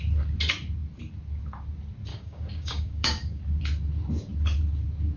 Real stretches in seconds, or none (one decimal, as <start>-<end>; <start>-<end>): 0.0-2.1; 3.4-5.2